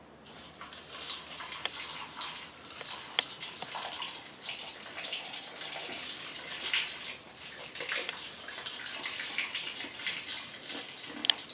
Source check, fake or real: real